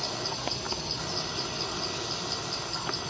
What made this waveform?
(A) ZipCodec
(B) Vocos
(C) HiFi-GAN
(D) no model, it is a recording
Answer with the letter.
D